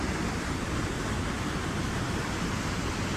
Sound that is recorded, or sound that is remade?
recorded